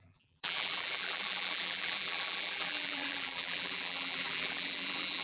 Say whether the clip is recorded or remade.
remade